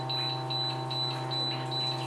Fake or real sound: real